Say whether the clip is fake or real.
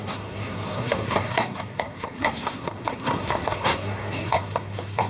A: fake